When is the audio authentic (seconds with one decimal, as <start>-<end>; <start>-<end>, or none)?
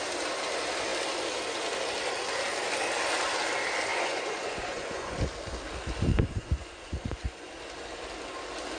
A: 0.0-3.9; 5.2-6.1; 7.5-8.8